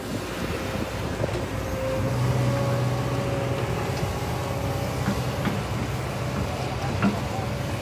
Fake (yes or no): no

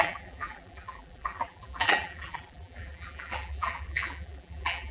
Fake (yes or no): yes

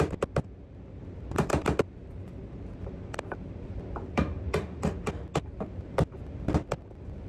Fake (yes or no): no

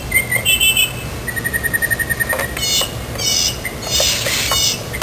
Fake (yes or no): no